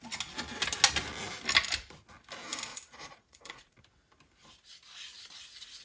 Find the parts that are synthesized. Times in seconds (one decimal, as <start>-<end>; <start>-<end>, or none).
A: 2.7-3.8